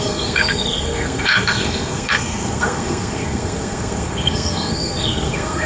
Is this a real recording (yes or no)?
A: no